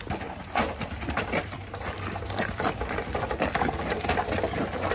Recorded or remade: remade